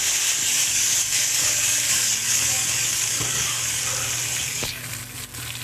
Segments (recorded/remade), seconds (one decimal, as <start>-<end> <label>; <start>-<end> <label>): 0.0-0.4 recorded; 0.4-3.8 remade; 3.8-4.3 recorded; 4.3-4.8 remade; 4.8-5.6 recorded